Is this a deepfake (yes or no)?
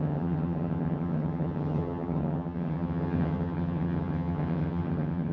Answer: yes